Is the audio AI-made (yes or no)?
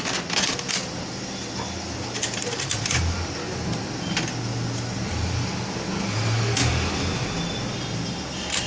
no